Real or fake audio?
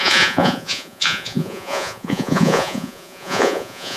fake